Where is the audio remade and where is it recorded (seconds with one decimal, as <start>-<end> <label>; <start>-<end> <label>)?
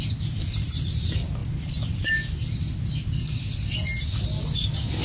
0.0-5.0 recorded